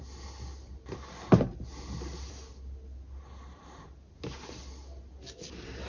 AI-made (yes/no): no